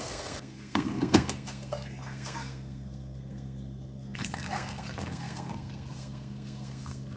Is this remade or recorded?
remade